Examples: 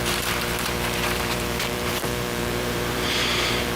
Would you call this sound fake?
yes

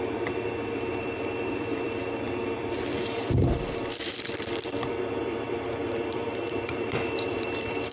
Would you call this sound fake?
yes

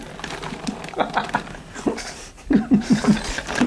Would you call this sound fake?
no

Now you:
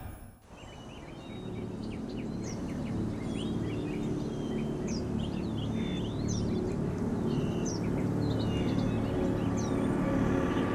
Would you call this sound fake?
no